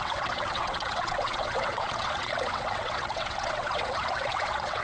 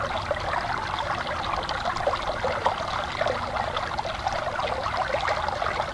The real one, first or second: second